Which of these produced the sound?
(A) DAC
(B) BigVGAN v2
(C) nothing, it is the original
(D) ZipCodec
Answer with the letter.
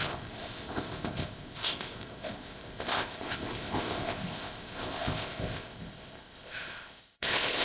D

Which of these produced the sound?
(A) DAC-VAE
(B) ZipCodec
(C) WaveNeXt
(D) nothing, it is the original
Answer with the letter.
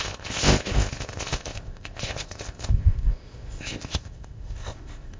B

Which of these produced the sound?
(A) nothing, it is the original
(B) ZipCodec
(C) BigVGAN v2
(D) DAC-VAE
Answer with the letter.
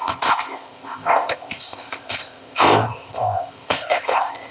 B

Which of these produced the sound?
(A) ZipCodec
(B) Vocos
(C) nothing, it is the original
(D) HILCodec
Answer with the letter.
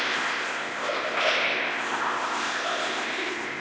A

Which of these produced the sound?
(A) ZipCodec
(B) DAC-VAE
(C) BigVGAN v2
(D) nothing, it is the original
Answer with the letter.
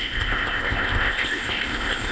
A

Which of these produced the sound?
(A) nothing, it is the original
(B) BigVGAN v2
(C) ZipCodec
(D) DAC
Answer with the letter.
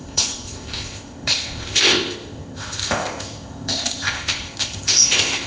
C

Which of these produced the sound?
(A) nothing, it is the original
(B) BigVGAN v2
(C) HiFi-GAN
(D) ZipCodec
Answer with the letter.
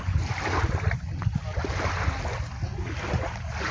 A